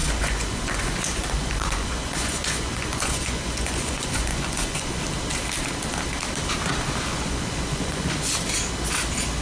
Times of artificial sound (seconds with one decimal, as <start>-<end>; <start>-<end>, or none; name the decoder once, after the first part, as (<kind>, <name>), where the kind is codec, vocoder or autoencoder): 0.0-5.0 (vocoder, Vocos); 7.1-8.3